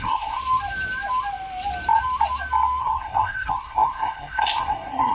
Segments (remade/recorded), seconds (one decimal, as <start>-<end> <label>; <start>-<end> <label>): 0.0-0.4 remade; 0.4-2.8 recorded; 2.8-5.1 remade